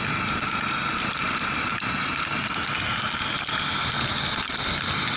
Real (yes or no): yes